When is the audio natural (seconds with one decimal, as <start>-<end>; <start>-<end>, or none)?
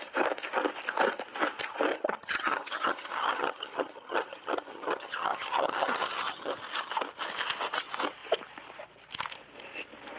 0.0-1.9; 6.5-10.2